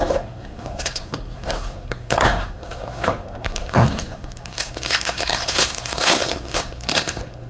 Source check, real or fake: fake